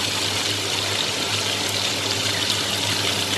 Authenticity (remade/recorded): recorded